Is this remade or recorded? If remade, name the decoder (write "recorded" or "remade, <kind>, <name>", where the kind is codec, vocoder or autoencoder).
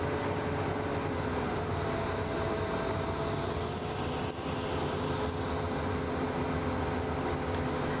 recorded